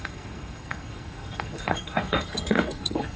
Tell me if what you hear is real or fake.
fake